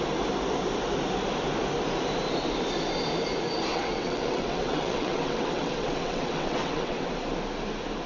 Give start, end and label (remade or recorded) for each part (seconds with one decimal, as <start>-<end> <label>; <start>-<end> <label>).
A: 0.0-3.7 recorded; 3.7-7.1 remade; 7.1-8.1 recorded